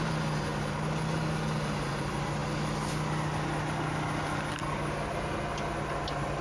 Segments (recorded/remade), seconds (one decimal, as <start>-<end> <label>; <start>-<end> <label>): 0.0-6.4 recorded